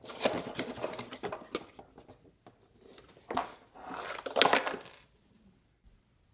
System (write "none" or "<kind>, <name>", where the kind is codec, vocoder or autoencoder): none